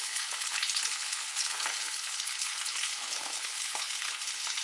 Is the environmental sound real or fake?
fake